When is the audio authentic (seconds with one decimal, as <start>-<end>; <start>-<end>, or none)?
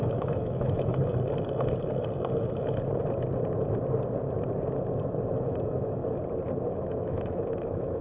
0.9-5.5; 6.0-6.7